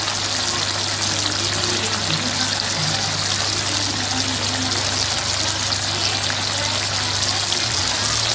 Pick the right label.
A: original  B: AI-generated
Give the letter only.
A